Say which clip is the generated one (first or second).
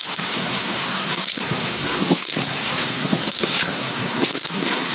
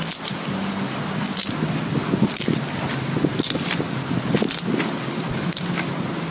first